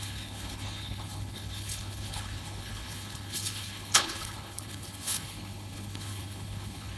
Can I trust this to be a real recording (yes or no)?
no